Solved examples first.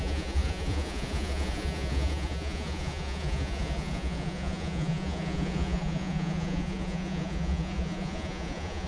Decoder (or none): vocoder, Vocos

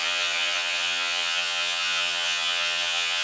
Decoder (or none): vocoder, HiFi-GAN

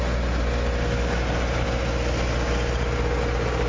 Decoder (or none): none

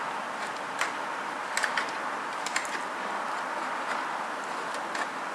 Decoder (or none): none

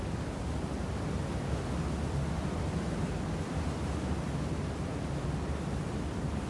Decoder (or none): none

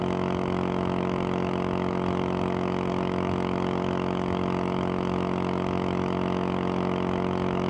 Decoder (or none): autoencoder, DAC-VAE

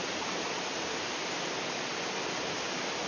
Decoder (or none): none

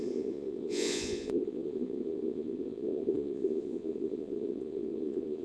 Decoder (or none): vocoder, Vocos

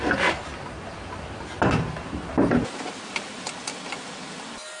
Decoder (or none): none